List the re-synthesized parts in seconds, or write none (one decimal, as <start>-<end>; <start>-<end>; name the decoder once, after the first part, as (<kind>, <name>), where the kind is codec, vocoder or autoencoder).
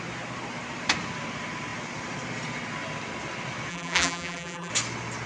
3.7-4.7 (vocoder, BigVGAN v2)